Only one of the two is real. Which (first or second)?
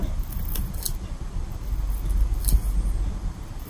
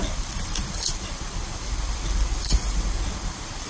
first